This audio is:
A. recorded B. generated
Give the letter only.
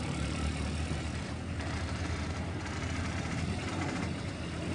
B